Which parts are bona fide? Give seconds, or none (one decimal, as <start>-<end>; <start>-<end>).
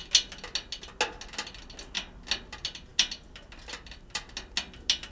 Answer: 0.0-5.1